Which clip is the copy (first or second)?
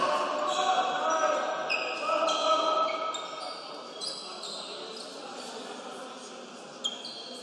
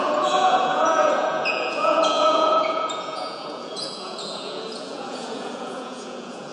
second